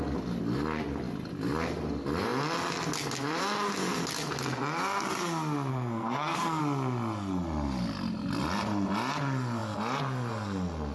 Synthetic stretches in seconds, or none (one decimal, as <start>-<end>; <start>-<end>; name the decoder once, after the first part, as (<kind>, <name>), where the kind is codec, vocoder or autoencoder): 5.7-6.6 (codec, SNAC)